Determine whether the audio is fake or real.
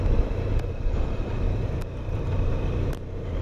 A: fake